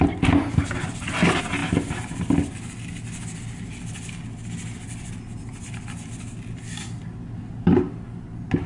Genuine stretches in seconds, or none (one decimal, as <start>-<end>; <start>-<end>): 0.0-8.7